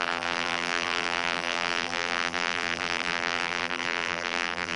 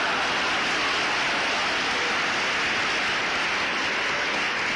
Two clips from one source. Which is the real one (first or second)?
second